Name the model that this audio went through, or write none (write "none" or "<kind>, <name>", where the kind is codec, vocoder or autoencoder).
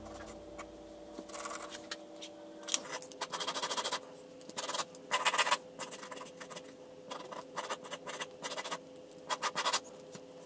none